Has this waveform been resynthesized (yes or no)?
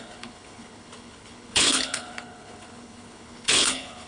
yes